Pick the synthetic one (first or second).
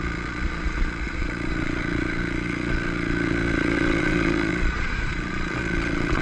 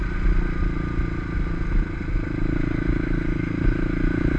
first